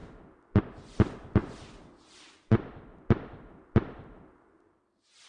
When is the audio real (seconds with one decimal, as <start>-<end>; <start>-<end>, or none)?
0.6-5.3